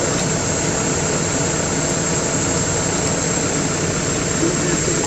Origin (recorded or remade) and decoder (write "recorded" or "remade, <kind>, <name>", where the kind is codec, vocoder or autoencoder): recorded